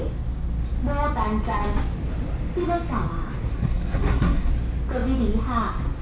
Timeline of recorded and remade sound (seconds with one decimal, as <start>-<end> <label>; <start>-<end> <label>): 0.0-3.5 recorded; 3.5-4.5 remade; 4.5-6.0 recorded